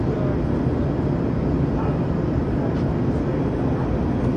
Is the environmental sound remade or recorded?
recorded